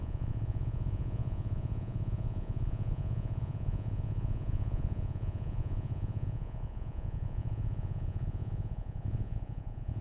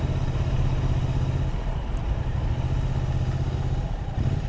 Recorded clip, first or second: second